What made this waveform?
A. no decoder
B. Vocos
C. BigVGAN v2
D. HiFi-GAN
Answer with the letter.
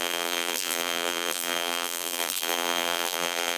C